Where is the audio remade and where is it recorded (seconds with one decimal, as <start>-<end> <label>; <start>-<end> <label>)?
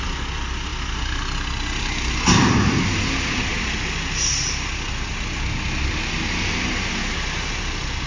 0.0-8.1 recorded